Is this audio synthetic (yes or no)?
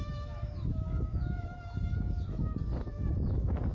yes